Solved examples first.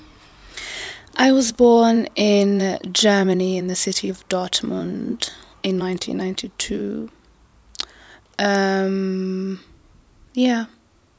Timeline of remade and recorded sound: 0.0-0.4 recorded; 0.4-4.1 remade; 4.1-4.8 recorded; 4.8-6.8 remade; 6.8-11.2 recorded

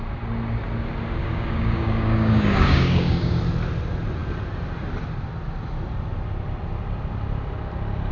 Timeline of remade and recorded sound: 0.0-1.2 recorded; 1.2-3.4 remade; 3.4-8.1 recorded

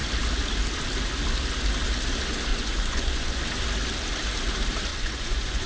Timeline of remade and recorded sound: 0.0-2.5 recorded; 2.5-3.4 remade; 3.4-4.9 recorded; 4.9-5.7 remade

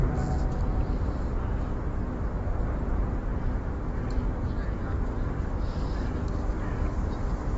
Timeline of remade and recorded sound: 0.0-7.6 recorded

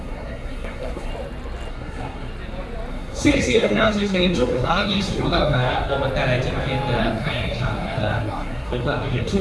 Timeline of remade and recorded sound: 0.0-1.1 remade; 1.1-1.7 recorded; 1.7-2.3 remade; 2.3-2.9 recorded; 2.9-5.9 remade; 5.9-7.0 recorded; 7.0-9.4 remade

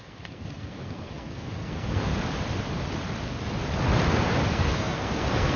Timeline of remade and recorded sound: 0.0-2.1 remade; 2.1-4.5 recorded; 4.5-5.6 remade